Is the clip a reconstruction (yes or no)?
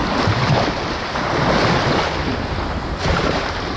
yes